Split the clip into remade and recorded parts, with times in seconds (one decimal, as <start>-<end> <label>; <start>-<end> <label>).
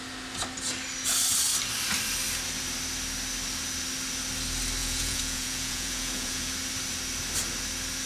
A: 0.0-4.8 recorded; 4.8-6.5 remade; 6.5-8.1 recorded